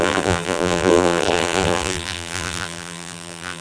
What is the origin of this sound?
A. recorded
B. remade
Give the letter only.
B